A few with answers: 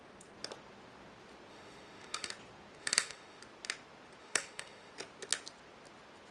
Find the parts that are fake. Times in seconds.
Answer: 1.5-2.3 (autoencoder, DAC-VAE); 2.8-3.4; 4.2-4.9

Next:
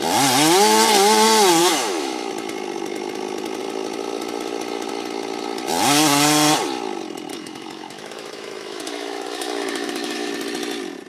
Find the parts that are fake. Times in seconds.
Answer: 1.6-2.3 (autoencoder, DAC-VAE); 7.3-10.3

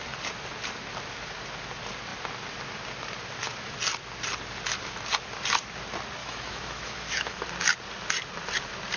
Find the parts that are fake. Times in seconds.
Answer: 6.2-7.4 (autoencoder, DAC-VAE)